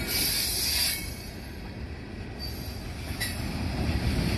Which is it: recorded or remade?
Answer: recorded